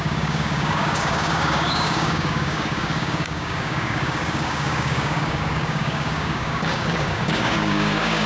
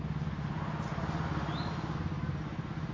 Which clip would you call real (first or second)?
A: second